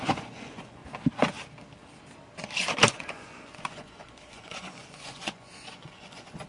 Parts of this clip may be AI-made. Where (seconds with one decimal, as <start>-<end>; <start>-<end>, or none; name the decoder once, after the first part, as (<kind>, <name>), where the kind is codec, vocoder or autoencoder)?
0.0-0.8 (vocoder, Vocos); 2.9-6.5